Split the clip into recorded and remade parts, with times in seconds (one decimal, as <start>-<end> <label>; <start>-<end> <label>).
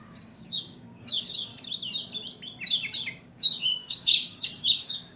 0.0-1.5 remade; 1.5-3.2 recorded; 3.2-5.2 remade